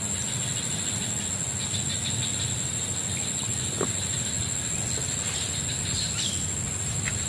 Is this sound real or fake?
real